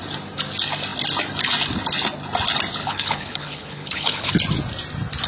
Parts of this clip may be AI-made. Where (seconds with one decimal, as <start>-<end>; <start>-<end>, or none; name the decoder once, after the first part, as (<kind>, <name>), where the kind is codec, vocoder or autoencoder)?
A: 2.8-4.3 (codec, HILCodec)